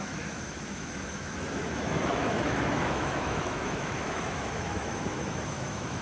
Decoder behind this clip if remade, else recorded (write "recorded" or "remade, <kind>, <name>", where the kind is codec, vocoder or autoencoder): remade, autoencoder, DAC-VAE